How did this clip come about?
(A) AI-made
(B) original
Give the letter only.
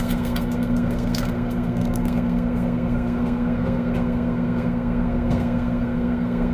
A